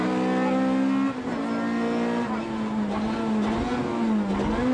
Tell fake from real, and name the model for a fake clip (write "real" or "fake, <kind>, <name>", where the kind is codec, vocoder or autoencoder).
real